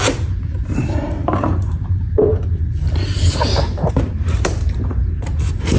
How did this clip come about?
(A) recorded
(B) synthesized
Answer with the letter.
B